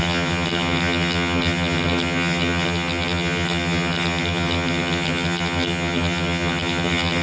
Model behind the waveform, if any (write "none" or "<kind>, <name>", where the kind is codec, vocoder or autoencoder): vocoder, HiFi-GAN